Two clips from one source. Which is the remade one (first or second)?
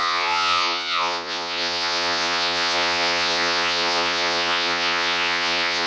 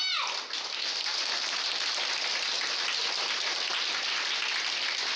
first